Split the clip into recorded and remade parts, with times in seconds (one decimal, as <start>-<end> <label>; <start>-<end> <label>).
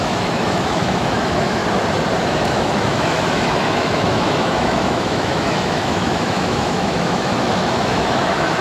0.0-1.6 remade; 1.6-2.2 recorded; 2.2-8.6 remade